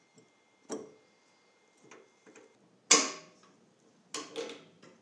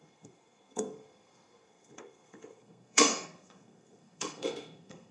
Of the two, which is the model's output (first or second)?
second